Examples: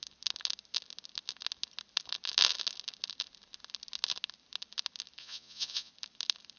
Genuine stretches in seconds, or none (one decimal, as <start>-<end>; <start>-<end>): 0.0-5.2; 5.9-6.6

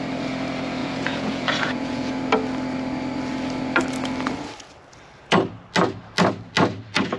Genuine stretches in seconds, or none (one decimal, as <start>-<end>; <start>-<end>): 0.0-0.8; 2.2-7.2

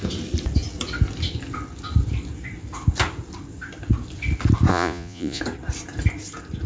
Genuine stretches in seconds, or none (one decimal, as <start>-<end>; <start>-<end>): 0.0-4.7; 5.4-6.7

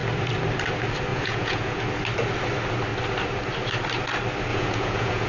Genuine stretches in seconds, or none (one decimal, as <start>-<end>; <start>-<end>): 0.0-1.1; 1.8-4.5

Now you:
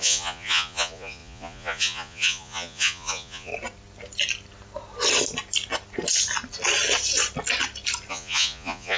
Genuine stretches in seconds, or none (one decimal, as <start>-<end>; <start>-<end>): 3.5-8.1